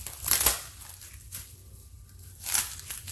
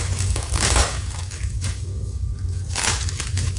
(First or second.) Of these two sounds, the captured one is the first